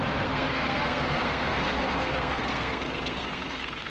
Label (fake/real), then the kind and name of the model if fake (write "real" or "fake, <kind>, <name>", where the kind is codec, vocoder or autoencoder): fake, codec, SNAC